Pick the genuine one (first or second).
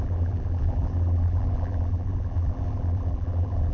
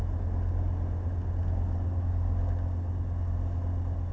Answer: second